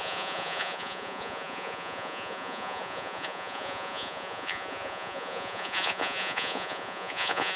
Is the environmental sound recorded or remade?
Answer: remade